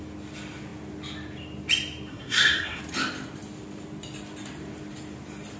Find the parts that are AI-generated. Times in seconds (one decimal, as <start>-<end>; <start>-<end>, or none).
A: 2.1-2.8